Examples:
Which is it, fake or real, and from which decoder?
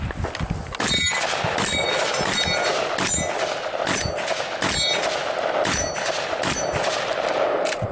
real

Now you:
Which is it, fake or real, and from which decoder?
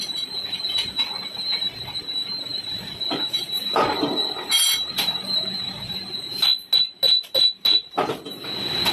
real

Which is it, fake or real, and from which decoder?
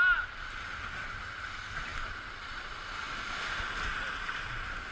real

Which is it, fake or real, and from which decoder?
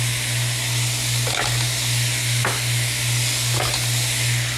real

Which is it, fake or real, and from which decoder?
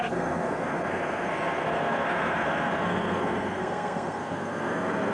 fake, codec, SNAC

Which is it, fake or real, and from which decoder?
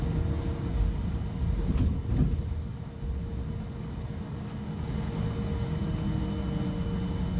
real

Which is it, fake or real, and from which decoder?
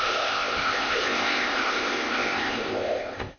fake, codec, ZipCodec